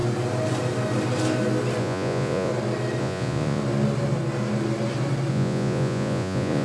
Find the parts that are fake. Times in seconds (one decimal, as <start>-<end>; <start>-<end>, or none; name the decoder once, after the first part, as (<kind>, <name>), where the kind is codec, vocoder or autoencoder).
1.8-2.5 (vocoder, Vocos); 3.0-3.6; 5.3-6.6